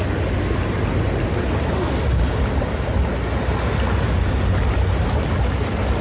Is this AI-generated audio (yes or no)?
no